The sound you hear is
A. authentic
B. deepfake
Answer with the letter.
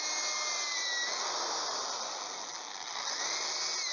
A